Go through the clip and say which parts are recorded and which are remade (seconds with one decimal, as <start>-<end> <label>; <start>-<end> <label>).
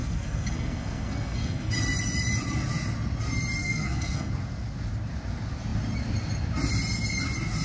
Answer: 0.0-1.7 remade; 1.7-3.6 recorded; 3.6-4.3 remade; 4.3-7.6 recorded